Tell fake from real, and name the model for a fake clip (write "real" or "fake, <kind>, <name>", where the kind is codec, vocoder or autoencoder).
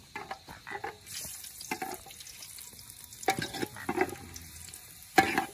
real